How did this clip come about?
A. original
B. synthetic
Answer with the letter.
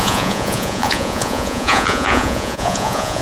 B